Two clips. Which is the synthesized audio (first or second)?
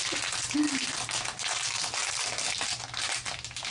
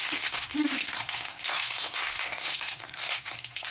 second